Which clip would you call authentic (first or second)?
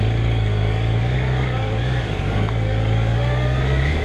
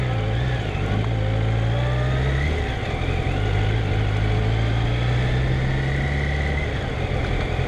second